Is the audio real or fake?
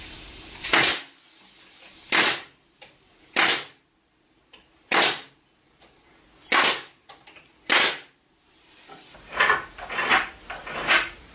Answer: real